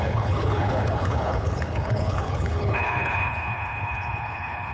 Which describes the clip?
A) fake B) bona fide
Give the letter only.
A